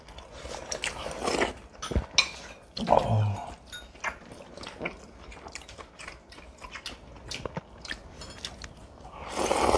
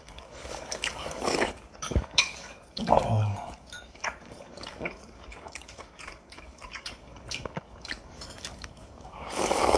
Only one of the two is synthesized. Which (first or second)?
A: second